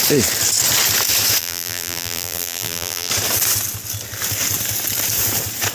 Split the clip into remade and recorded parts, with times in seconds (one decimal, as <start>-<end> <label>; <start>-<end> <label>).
0.0-1.4 recorded; 1.4-3.1 remade; 3.1-5.7 recorded